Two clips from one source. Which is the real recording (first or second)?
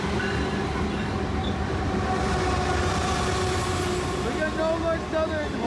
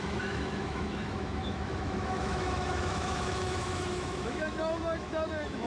first